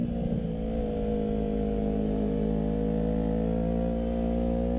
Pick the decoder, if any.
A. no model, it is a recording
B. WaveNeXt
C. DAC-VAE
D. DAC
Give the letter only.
A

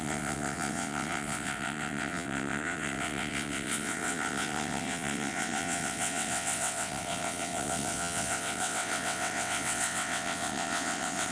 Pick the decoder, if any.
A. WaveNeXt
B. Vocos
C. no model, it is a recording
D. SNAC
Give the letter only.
A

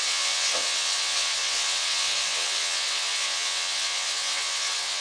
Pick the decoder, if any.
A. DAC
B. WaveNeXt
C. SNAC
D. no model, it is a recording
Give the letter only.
B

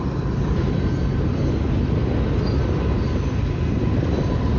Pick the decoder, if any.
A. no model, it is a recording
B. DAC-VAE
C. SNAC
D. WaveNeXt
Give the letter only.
A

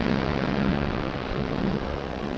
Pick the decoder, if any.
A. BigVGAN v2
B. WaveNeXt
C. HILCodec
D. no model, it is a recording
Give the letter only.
B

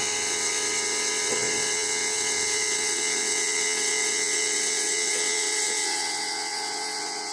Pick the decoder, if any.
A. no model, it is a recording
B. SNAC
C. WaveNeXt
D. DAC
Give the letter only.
C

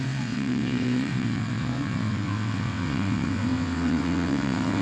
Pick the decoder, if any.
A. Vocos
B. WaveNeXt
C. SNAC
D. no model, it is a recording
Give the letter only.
B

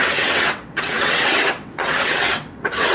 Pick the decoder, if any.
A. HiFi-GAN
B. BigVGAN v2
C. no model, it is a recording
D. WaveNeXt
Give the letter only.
D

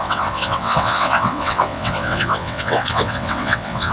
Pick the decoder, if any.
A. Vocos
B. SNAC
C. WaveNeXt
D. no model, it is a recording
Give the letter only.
C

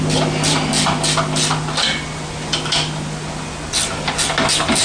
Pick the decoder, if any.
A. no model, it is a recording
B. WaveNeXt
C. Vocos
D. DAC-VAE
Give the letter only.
A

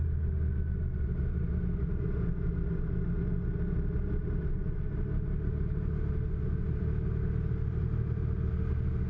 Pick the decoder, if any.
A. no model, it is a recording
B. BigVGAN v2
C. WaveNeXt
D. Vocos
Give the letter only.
A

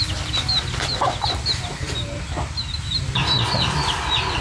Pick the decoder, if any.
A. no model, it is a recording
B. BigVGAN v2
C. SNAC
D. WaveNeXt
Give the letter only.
A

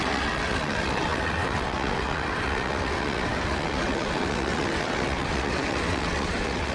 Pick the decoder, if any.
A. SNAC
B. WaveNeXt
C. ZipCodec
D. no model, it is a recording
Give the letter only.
B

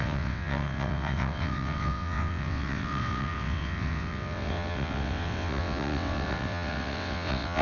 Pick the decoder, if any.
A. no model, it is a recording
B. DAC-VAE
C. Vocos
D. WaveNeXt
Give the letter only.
D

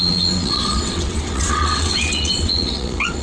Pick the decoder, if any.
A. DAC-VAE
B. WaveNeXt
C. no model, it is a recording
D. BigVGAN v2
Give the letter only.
B